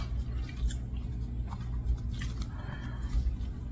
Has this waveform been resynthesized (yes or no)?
no